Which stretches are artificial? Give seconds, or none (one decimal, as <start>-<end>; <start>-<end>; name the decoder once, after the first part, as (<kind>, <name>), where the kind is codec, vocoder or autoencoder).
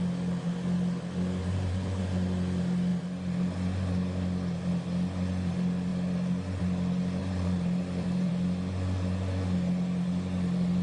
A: 1.4-2.0 (vocoder, BigVGAN v2); 7.2-8.3